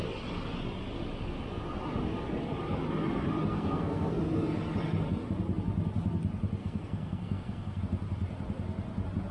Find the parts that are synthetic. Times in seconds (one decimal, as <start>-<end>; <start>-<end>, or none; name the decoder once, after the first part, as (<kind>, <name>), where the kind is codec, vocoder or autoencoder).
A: 3.5-4.2 (codec, SNAC); 6.6-7.8